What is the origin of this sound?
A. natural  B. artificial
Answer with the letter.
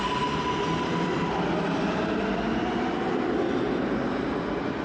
A